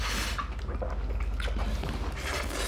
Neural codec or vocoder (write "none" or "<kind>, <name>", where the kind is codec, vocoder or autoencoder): none